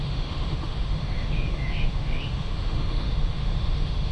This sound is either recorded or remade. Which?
remade